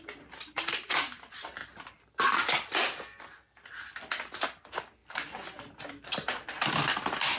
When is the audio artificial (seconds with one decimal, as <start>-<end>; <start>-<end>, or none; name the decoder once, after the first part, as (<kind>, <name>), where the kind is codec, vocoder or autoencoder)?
none